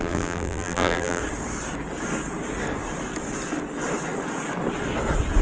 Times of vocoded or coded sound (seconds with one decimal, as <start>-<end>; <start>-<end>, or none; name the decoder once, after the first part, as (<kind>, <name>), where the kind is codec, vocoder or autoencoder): 0.0-1.2 (vocoder, BigVGAN v2)